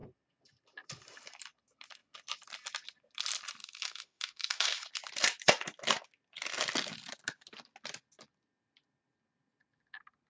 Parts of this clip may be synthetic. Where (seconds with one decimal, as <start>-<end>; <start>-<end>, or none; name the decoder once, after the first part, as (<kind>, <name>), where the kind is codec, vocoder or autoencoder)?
3.6-4.9 (autoencoder, DAC-VAE)